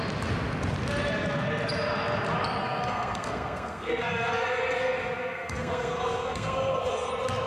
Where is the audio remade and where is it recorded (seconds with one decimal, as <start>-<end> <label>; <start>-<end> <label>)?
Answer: 0.0-2.6 recorded; 2.6-7.1 remade; 7.1-7.5 recorded